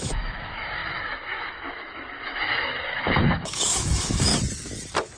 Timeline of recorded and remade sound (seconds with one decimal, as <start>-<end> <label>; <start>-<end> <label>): 0.0-4.3 remade; 4.3-5.2 recorded